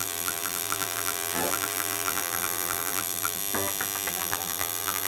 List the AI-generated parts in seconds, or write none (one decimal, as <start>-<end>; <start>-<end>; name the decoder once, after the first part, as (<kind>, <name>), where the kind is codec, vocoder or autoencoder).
0.0-3.4 (vocoder, BigVGAN v2); 4.1-5.1